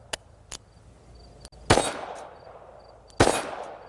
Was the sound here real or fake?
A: real